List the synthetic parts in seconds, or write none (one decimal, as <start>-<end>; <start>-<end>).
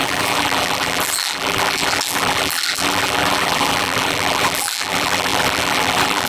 0.0-6.3